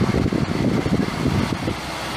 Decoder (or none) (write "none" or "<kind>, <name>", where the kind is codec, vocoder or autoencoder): none